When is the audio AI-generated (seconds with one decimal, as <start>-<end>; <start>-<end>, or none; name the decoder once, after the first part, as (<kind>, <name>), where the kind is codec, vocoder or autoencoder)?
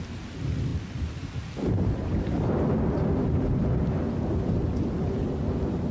none